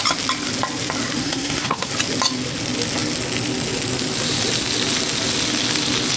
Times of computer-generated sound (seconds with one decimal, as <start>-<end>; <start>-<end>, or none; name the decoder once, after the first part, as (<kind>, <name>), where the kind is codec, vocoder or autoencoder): 1.2-1.9 (codec, SNAC)